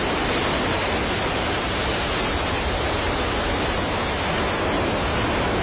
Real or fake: real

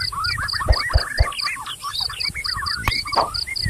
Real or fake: real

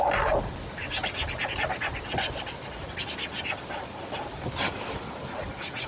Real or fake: real